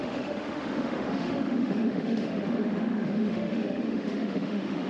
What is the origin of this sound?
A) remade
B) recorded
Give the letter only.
A